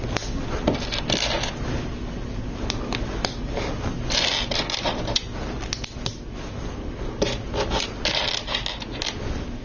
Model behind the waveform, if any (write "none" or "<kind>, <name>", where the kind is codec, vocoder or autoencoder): none